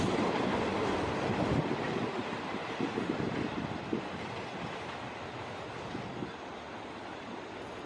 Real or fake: real